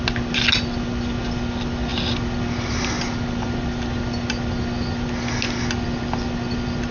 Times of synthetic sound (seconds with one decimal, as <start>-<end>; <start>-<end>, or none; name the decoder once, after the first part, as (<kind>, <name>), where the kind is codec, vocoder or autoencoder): none